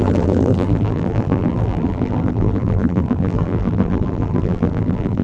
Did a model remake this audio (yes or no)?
yes